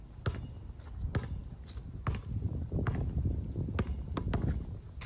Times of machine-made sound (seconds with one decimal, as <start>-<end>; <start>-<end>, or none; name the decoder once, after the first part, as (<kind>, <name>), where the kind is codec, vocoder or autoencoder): none